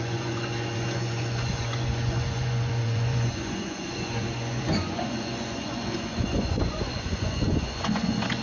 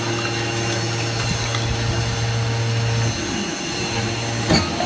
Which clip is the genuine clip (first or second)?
second